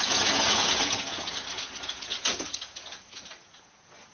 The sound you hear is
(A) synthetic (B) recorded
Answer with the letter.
A